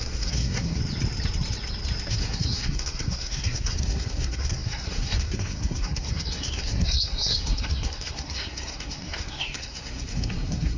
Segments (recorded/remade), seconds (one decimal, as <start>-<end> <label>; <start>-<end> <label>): 0.0-0.8 remade; 0.8-2.1 recorded; 2.1-10.8 remade